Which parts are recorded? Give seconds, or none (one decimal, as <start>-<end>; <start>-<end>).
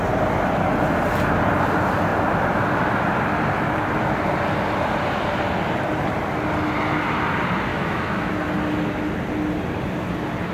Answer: 0.0-7.7; 8.3-10.5